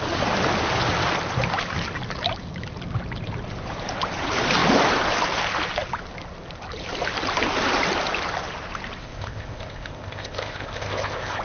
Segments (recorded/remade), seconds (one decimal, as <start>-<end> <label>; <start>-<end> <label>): 0.0-9.0 recorded; 9.0-11.4 remade